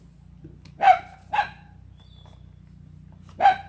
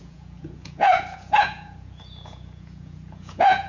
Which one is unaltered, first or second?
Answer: first